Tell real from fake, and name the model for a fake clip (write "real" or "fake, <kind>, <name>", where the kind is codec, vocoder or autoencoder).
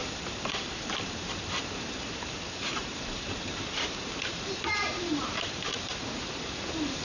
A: fake, vocoder, BigVGAN v2